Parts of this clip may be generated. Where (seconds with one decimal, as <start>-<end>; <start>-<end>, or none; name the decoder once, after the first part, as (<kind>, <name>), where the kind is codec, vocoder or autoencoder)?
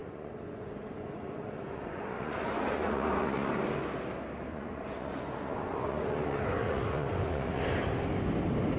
0.0-3.5 (vocoder, Vocos); 4.5-7.6